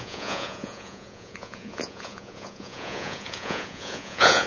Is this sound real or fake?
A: fake